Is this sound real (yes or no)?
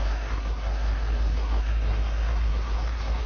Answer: no